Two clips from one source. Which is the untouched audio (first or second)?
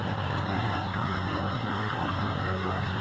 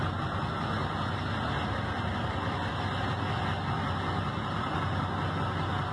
second